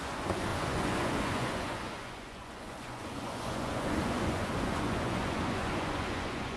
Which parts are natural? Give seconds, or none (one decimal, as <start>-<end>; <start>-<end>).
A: none